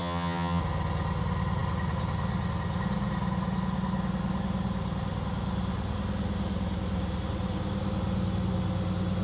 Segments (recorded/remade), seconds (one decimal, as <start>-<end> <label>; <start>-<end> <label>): 0.0-0.6 remade; 0.6-9.2 recorded